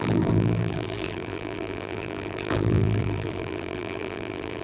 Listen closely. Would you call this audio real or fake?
fake